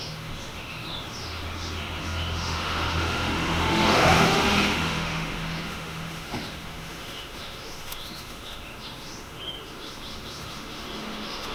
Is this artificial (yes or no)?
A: yes